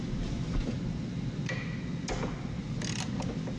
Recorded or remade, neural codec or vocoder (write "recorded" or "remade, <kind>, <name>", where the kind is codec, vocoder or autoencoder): recorded